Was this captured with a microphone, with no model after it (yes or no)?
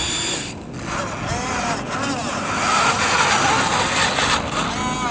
yes